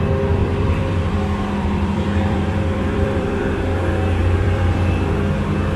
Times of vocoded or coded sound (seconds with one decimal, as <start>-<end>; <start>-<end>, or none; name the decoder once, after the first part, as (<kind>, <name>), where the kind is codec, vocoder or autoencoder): 0.4-3.8 (vocoder, BigVGAN v2); 4.2-5.1